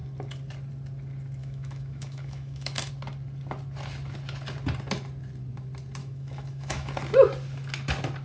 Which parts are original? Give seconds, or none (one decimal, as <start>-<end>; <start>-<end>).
0.0-1.4; 2.9-6.0; 6.9-8.2